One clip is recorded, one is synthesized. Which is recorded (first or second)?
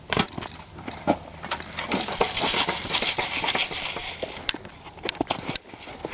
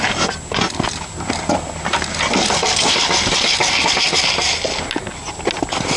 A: second